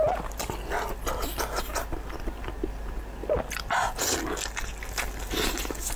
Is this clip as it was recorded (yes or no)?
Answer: yes